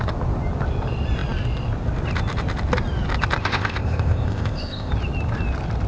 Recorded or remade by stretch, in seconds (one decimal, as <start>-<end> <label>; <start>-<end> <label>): 0.0-3.4 recorded; 3.4-4.9 remade; 4.9-5.9 recorded

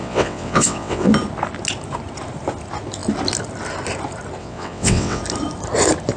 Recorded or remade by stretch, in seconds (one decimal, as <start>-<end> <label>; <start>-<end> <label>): 0.0-1.1 remade; 1.1-4.4 recorded; 4.4-5.2 remade; 5.2-6.2 recorded

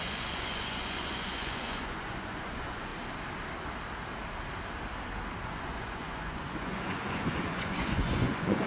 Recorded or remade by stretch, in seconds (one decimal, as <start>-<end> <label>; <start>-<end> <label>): 0.0-2.9 remade; 2.9-5.4 recorded; 5.4-8.7 remade